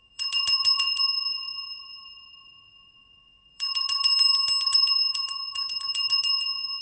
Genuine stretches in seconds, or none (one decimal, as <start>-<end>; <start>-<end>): 4.1-4.6